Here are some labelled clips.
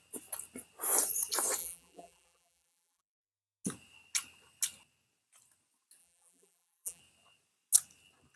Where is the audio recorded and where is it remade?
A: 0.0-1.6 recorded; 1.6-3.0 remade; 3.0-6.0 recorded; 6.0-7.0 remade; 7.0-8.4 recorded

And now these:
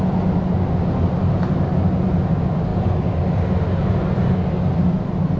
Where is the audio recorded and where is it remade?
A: 0.0-5.4 recorded

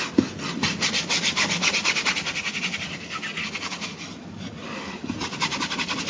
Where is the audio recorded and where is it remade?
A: 0.0-0.6 remade; 0.6-4.3 recorded; 4.3-6.1 remade

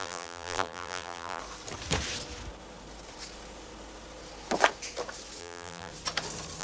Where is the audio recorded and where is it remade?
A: 0.0-1.4 remade; 1.4-5.4 recorded; 5.4-5.9 remade; 5.9-6.6 recorded

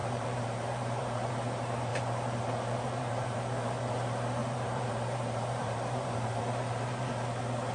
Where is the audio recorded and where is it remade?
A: 0.0-1.3 remade; 1.3-1.9 recorded; 1.9-3.7 remade; 3.7-4.4 recorded; 4.4-7.1 remade; 7.1-7.7 recorded

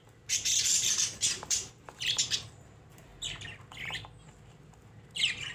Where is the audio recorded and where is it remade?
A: 0.0-3.1 remade; 3.1-4.4 recorded; 4.4-5.5 remade

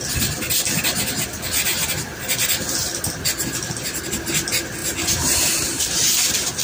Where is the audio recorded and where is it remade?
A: 0.0-6.6 recorded

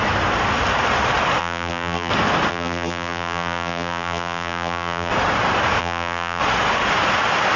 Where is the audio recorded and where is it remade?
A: 0.0-1.4 recorded; 1.4-2.1 remade; 2.1-2.5 recorded; 2.5-5.1 remade; 5.1-5.8 recorded; 5.8-6.4 remade; 6.4-7.6 recorded